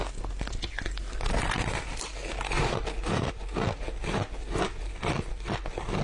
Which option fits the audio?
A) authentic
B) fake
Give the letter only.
A